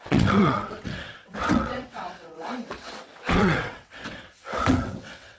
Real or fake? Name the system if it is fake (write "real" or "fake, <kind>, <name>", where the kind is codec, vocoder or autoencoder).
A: fake, vocoder, WaveNeXt